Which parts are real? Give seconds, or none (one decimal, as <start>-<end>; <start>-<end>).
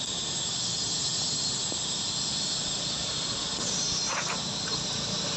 0.0-5.4